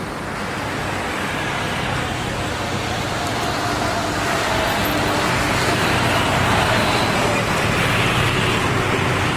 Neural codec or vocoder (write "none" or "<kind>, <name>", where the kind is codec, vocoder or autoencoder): none